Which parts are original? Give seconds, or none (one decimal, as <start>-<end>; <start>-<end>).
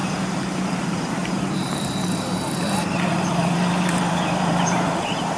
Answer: 0.0-0.7